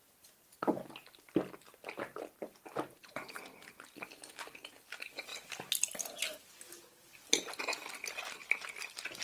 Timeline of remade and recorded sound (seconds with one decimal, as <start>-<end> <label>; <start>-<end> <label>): 0.0-9.2 recorded